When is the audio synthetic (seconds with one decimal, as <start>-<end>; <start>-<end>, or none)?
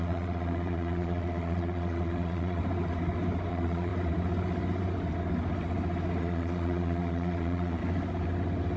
0.0-2.6; 3.5-3.9; 6.2-7.8